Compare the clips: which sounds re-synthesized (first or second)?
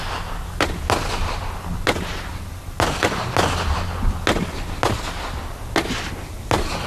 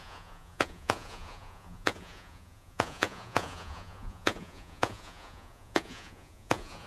second